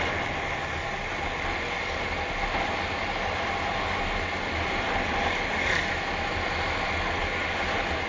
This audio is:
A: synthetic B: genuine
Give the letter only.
B